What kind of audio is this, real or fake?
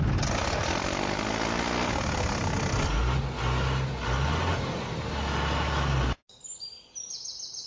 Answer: real